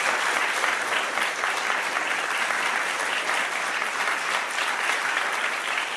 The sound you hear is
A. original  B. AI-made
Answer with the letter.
B